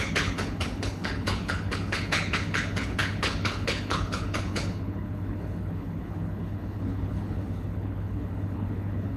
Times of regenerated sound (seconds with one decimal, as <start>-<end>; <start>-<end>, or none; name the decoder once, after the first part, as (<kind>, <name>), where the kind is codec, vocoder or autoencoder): 0.0-9.2 (codec, HILCodec)